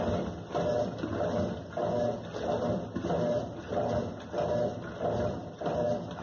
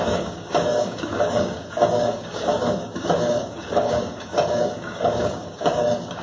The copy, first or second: second